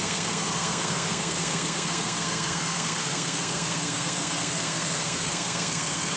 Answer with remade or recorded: remade